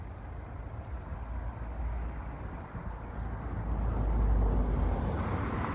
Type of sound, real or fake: real